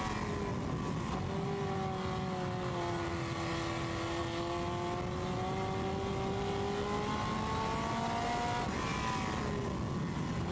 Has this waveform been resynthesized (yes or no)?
no